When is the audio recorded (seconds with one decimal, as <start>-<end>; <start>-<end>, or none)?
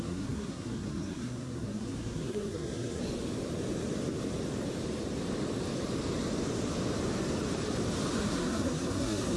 3.0-8.2